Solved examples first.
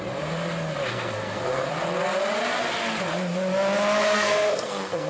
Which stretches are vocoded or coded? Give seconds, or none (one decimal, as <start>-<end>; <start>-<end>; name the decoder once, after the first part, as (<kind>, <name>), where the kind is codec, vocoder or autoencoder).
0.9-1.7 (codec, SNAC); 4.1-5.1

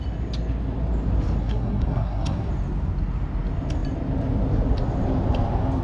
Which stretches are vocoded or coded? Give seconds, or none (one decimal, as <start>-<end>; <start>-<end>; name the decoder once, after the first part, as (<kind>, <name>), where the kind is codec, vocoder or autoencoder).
1.4-2.5 (codec, SNAC)

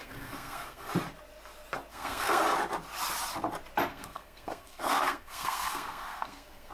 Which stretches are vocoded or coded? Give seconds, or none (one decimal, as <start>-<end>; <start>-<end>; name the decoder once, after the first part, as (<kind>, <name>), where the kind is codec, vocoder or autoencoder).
0.0-0.9 (codec, SNAC); 1.9-2.4; 3.9-6.7